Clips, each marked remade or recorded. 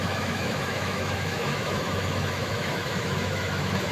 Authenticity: remade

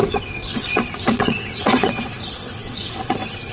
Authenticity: remade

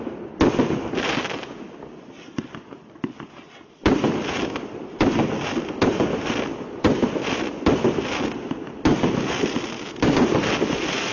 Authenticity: recorded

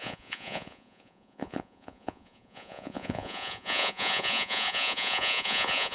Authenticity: remade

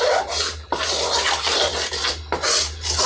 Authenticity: recorded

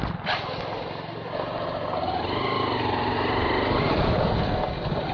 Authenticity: recorded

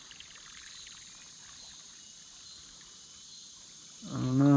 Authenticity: recorded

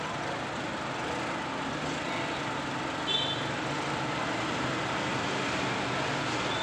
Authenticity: recorded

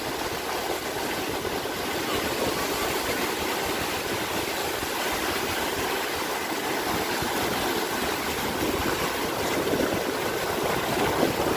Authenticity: recorded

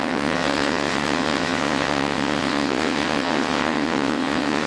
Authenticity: remade